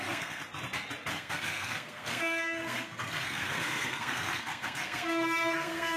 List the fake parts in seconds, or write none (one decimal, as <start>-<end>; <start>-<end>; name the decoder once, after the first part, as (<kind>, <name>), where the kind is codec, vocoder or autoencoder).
0.0-0.4 (codec, SNAC); 1.1-6.0